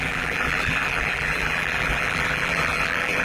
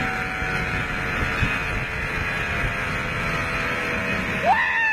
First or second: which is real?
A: second